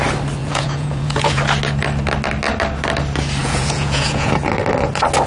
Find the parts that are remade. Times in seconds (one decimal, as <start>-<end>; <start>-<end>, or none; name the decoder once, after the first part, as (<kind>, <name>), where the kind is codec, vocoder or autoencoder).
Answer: 0.4-1.4 (vocoder, Vocos); 3.4-4.5